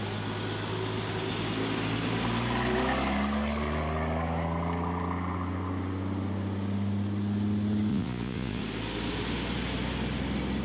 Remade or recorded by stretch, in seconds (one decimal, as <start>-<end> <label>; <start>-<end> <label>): 0.0-7.9 recorded; 7.9-8.6 remade; 8.6-10.6 recorded